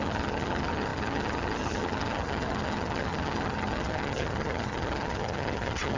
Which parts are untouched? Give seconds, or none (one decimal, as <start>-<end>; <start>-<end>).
none